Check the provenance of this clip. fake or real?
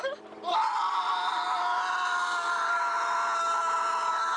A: real